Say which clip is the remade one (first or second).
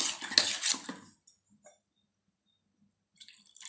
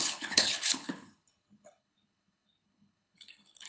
second